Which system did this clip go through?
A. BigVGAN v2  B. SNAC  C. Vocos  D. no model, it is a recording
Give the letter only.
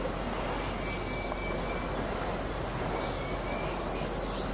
D